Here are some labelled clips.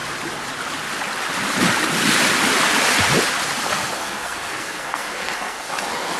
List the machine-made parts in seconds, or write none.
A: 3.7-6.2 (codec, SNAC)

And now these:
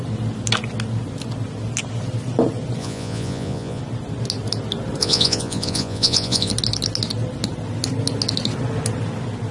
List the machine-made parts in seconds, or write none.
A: 2.8-3.8 (vocoder, Vocos); 5.0-6.5

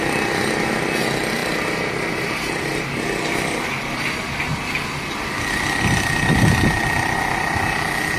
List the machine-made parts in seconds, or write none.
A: none

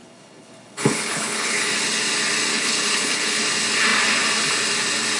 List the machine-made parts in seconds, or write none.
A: 0.0-1.6 (codec, HILCodec); 2.5-3.4